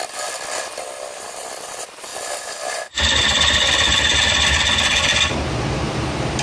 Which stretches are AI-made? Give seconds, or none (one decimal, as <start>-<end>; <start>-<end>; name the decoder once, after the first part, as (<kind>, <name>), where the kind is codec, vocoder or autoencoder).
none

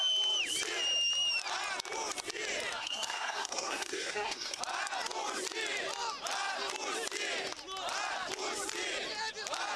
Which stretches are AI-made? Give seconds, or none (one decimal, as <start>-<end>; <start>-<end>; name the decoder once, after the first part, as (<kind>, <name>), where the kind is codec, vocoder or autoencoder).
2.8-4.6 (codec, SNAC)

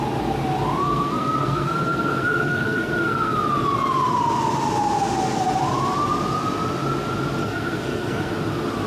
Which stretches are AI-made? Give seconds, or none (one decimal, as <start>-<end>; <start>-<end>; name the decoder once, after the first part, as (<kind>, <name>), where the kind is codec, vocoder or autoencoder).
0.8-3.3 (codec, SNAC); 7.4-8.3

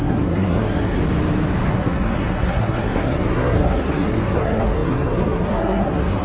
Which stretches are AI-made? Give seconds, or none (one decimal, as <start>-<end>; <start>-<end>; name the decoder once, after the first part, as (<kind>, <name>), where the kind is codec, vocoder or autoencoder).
0.0-1.0 (codec, SNAC); 1.7-6.2

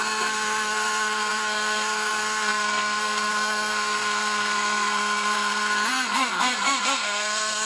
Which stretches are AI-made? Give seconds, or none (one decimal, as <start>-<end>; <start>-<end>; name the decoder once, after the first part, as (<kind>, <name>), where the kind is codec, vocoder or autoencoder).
0.0-7.7 (codec, SNAC)

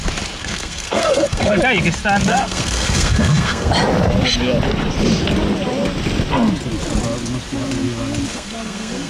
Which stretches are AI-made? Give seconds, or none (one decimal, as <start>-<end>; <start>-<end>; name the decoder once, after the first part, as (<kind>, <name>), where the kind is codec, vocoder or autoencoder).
0.4-1.6 (codec, SNAC); 2.3-3.7; 8.3-9.1